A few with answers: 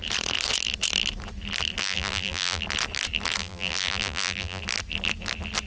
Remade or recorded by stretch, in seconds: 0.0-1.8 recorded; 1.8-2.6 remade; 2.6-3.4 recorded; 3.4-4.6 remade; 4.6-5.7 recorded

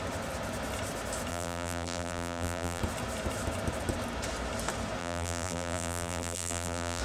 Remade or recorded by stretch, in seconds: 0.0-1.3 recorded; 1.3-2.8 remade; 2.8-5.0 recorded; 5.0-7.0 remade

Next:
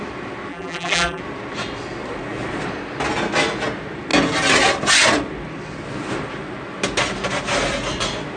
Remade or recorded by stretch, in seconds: 0.0-0.5 recorded; 0.5-1.2 remade; 1.2-8.4 recorded